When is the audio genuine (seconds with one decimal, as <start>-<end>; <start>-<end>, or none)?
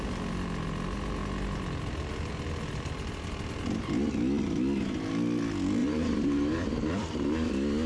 0.0-5.8; 7.5-7.9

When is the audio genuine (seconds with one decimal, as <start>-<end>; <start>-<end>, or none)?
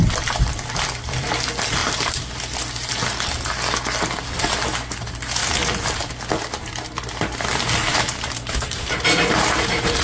0.0-7.9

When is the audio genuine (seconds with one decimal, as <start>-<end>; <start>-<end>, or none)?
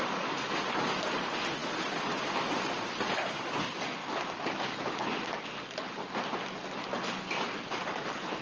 0.0-1.6; 2.5-8.4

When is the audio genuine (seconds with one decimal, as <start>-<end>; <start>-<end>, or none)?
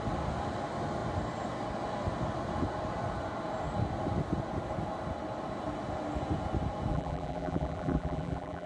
0.0-6.9